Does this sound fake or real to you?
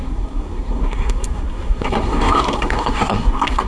fake